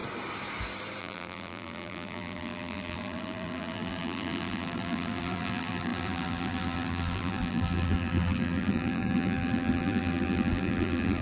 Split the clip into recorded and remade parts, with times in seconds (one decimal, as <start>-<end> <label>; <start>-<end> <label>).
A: 0.0-1.0 recorded; 1.0-11.2 remade